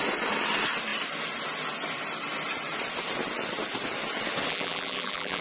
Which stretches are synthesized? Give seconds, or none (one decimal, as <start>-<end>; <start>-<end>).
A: 4.5-5.4